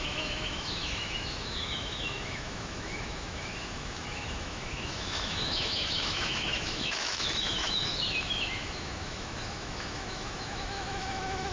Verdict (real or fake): fake